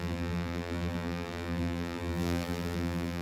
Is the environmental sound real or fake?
fake